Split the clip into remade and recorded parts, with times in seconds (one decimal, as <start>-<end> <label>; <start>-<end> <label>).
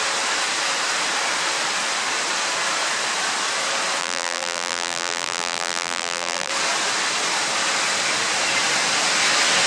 0.0-4.0 recorded; 4.0-6.5 remade; 6.5-9.7 recorded